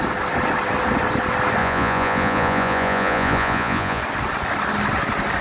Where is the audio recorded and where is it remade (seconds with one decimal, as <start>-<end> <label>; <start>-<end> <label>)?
0.0-1.6 recorded; 1.6-4.0 remade; 4.0-5.4 recorded